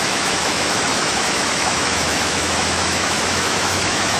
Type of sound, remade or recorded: remade